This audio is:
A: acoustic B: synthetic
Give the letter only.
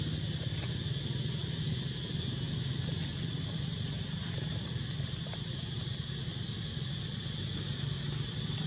A